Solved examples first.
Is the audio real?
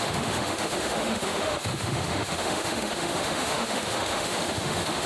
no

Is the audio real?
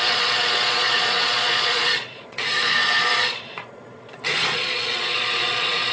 no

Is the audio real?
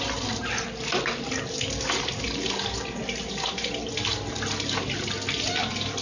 yes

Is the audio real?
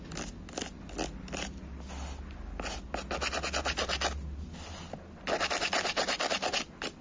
yes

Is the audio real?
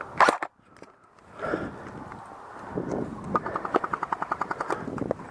yes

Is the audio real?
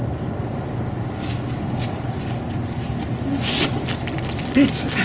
yes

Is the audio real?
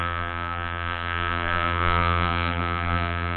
no